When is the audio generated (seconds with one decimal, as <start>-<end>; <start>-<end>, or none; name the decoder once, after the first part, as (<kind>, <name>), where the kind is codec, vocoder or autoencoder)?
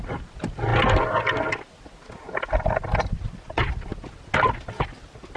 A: none